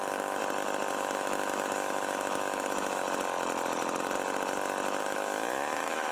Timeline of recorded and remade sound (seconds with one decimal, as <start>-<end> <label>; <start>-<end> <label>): 0.0-0.4 remade; 0.4-0.9 recorded; 0.9-3.0 remade; 3.0-5.0 recorded; 5.0-6.1 remade